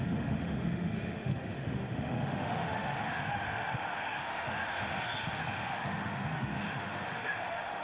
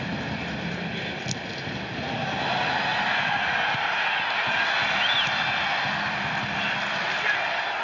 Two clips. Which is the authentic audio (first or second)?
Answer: second